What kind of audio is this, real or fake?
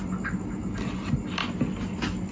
real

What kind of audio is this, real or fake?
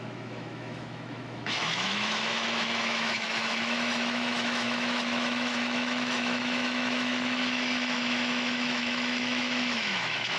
fake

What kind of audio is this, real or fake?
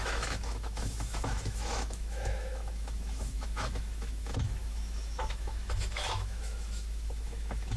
fake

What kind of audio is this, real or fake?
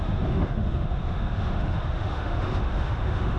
fake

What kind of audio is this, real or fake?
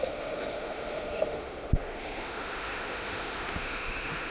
fake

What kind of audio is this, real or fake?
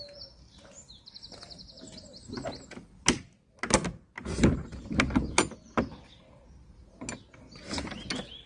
real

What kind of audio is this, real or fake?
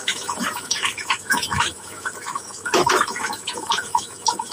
fake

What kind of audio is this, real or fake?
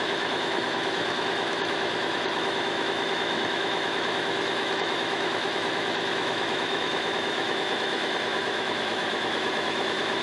fake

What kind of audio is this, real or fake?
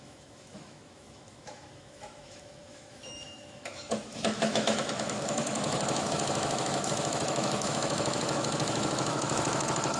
fake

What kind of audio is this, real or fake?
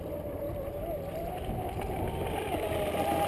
real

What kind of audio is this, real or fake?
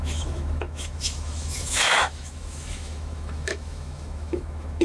fake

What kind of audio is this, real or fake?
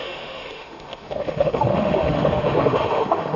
fake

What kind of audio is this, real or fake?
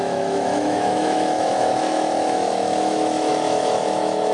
fake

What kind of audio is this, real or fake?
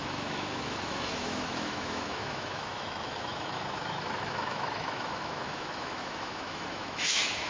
fake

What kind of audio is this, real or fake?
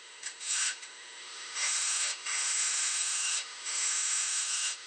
fake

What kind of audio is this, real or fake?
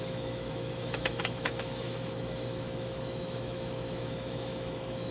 fake